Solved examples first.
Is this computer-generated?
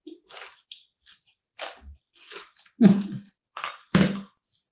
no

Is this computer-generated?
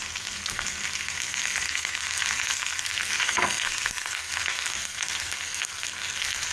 yes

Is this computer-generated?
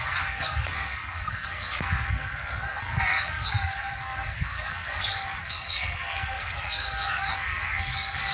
yes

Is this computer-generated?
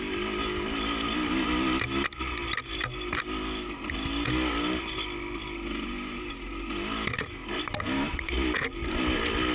no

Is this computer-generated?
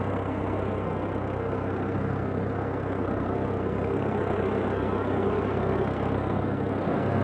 yes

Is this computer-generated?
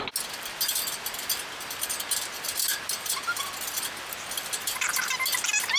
no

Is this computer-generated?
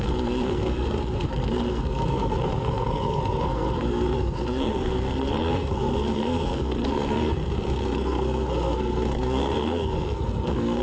yes